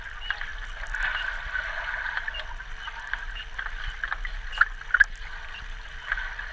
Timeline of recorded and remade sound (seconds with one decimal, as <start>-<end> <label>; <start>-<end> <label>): 0.0-6.5 recorded

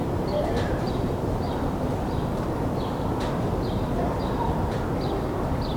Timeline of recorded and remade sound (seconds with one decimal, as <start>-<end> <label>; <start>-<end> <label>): 0.0-2.9 remade; 2.9-5.8 recorded

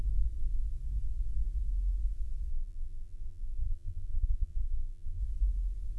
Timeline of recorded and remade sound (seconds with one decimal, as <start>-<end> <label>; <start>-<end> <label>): 0.0-2.5 recorded; 2.5-5.2 remade; 5.2-6.0 recorded

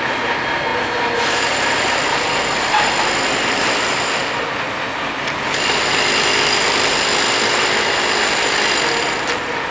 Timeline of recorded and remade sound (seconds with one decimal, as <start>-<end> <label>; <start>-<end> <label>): 0.0-9.7 recorded

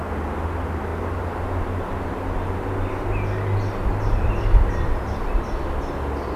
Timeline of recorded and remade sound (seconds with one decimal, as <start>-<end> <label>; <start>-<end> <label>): 0.0-6.4 recorded

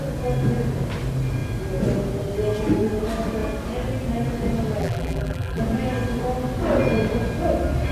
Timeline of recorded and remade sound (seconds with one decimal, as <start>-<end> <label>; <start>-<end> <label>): 0.0-4.8 recorded; 4.8-5.6 remade; 5.6-7.9 recorded

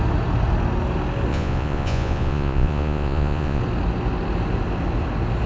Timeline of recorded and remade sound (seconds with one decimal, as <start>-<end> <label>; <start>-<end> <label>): 0.0-1.3 recorded; 1.3-3.6 remade; 3.6-5.5 recorded